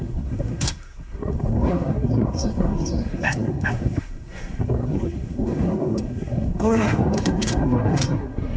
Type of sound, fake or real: fake